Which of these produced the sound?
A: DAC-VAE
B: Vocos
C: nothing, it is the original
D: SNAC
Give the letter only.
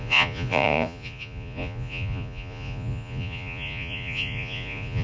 B